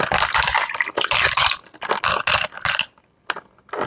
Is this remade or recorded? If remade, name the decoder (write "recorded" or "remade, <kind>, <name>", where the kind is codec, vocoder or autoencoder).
recorded